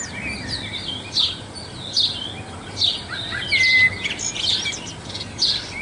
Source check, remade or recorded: recorded